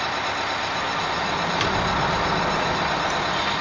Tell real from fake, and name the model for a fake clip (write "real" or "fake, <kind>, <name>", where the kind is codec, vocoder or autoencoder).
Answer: real